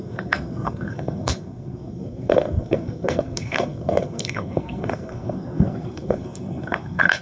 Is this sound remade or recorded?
remade